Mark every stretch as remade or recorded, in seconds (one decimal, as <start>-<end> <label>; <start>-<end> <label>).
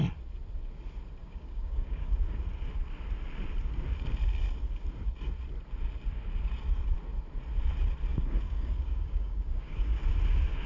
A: 0.0-1.2 recorded; 1.2-2.1 remade; 2.1-8.1 recorded; 8.1-10.1 remade; 10.1-10.7 recorded